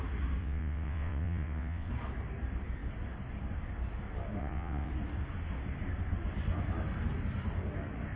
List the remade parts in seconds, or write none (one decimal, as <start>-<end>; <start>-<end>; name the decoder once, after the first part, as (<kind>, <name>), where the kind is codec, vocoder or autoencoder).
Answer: 0.4-1.9 (vocoder, WaveNeXt); 4.4-4.9